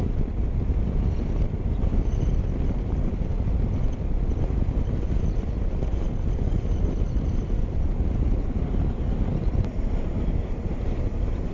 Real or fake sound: real